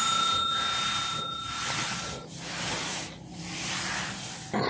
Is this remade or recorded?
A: recorded